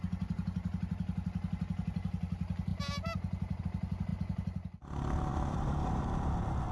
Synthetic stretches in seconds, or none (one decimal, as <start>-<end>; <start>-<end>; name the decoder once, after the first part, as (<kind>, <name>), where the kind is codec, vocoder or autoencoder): 5.3-6.0 (vocoder, BigVGAN v2)